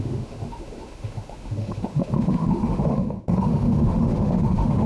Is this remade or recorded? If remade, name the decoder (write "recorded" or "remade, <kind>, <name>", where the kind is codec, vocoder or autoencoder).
remade, autoencoder, DAC-VAE